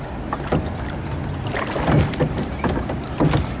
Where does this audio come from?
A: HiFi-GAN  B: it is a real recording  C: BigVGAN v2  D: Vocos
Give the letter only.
B